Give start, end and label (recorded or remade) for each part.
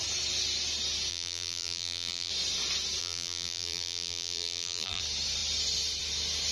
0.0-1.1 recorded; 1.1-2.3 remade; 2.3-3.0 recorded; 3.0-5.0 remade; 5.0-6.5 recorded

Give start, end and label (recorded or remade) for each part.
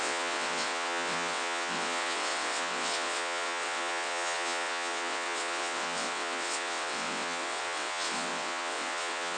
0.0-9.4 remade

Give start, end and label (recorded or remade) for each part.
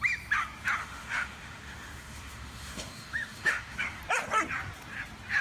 0.0-0.8 recorded; 0.8-4.0 remade; 4.0-5.4 recorded